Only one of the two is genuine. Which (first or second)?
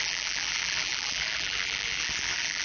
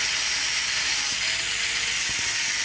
second